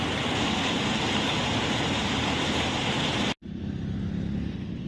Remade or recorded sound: recorded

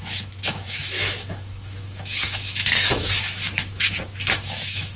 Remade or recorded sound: remade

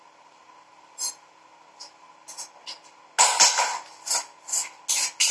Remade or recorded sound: recorded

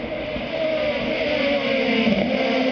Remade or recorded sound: recorded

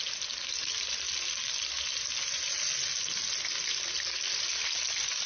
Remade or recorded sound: recorded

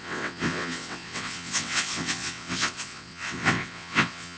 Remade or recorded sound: remade